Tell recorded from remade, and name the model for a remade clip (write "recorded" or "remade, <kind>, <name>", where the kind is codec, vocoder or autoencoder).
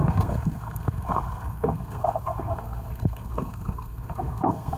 remade, codec, SNAC